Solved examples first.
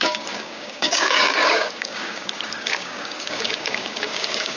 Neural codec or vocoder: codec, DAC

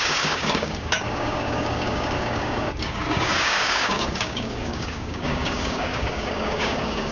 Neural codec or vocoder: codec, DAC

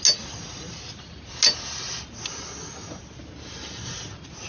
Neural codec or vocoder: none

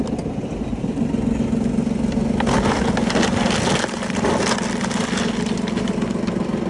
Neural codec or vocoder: none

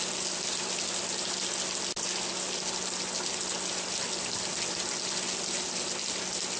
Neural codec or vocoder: none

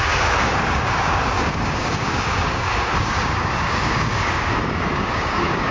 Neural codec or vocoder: codec, DAC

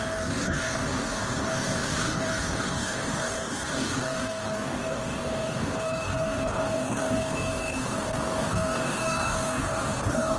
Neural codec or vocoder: codec, DAC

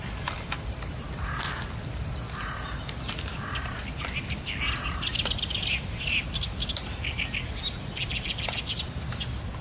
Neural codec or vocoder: none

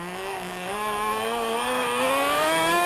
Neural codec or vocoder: codec, DAC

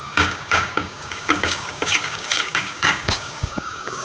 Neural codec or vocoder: codec, DAC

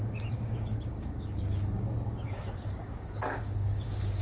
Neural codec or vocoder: codec, DAC